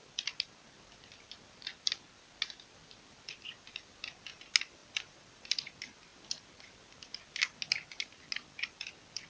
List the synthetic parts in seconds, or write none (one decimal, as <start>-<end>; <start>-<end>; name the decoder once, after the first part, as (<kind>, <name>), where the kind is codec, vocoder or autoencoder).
none